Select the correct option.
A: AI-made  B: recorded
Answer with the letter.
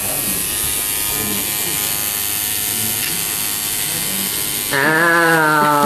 B